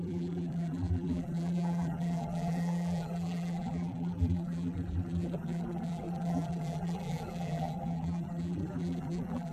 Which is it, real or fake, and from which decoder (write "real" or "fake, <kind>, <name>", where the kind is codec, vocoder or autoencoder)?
fake, vocoder, BigVGAN v2